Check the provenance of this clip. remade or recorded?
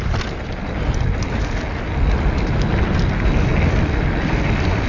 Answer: recorded